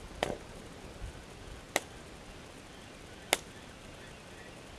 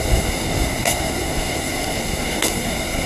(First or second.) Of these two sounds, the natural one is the first